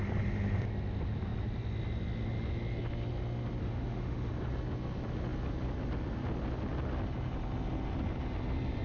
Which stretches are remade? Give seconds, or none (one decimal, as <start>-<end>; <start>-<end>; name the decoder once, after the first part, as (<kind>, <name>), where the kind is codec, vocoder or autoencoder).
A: 3.6-4.3 (autoencoder, DAC-VAE)